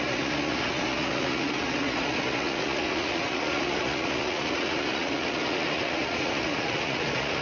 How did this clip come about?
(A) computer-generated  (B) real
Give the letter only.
A